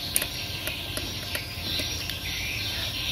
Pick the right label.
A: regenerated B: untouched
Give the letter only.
B